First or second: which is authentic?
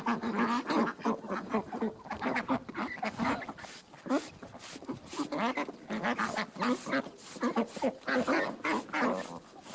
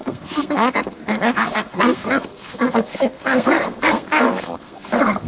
first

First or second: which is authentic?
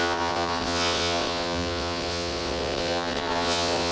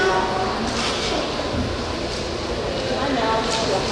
second